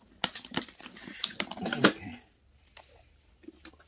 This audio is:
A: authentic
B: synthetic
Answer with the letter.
A